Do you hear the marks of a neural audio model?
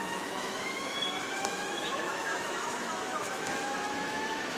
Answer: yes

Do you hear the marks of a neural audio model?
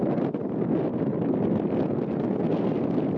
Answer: no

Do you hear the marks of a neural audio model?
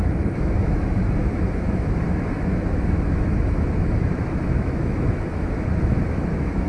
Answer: yes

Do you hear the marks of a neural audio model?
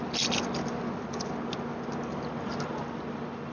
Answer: no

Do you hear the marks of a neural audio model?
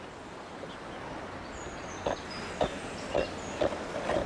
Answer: no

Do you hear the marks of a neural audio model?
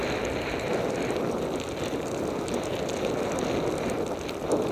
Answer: no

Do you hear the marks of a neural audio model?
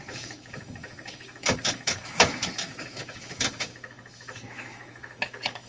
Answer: yes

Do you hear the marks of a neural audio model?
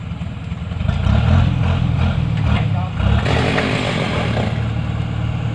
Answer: no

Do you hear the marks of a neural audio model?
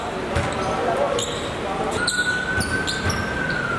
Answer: no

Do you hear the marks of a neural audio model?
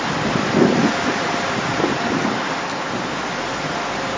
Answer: no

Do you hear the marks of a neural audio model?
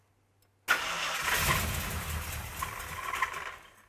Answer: no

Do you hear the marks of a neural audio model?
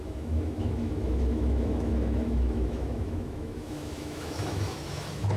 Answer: yes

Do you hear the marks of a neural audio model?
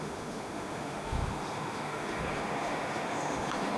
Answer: yes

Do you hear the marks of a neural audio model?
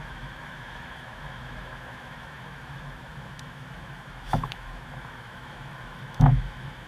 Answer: yes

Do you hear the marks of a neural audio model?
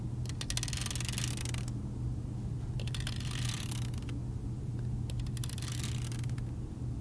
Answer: no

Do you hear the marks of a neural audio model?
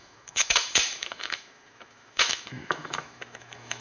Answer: yes